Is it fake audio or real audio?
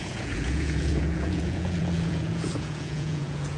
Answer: fake